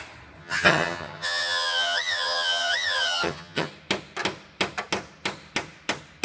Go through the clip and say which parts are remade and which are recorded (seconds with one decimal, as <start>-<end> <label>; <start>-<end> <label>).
0.0-0.4 recorded; 0.4-3.7 remade; 3.7-6.2 recorded